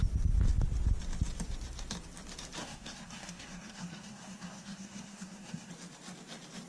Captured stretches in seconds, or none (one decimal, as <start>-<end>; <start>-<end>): 0.0-2.6; 5.7-6.7